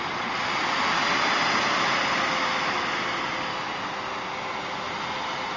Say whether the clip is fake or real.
real